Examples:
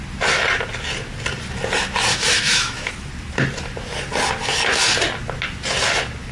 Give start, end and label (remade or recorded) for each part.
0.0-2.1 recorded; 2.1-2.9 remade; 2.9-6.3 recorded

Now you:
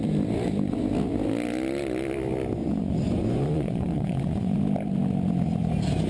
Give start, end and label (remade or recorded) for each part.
0.0-2.6 recorded; 2.6-4.6 remade; 4.6-6.1 recorded

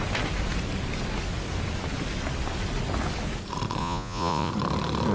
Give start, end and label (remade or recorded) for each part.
0.0-3.8 recorded; 3.8-4.5 remade; 4.5-5.1 recorded

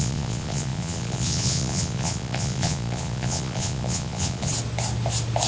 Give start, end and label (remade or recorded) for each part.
0.0-4.5 remade; 4.5-5.5 recorded

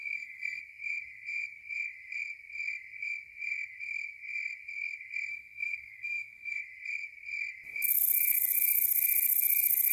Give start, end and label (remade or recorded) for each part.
0.0-0.6 remade; 0.6-5.3 recorded; 5.3-6.6 remade; 6.6-9.9 recorded